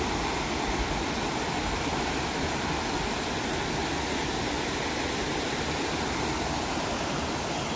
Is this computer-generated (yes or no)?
no